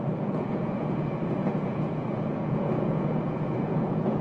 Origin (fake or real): fake